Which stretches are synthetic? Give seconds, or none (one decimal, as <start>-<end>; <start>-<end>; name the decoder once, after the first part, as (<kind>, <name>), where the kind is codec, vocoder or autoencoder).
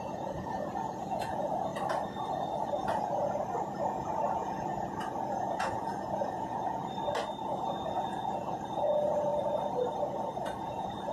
0.0-1.7 (vocoder, Vocos); 2.3-3.4; 3.9-6.8; 7.4-9.3; 10.6-11.1